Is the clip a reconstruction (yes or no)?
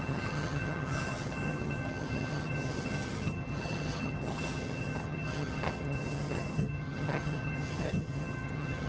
yes